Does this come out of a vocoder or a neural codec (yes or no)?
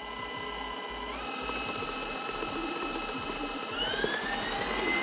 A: no